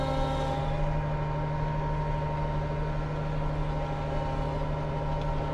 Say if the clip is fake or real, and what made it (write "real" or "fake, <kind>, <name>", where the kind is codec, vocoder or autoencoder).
real